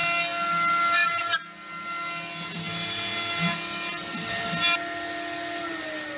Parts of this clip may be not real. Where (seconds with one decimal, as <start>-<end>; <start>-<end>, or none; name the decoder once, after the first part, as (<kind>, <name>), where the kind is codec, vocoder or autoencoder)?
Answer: none